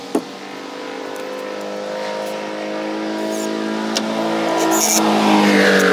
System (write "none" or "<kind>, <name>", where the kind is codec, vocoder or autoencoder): none